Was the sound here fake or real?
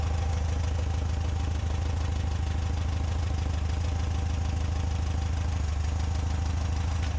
real